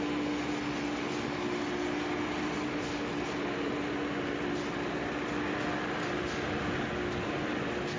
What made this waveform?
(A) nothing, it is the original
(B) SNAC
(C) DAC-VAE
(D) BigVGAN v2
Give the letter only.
A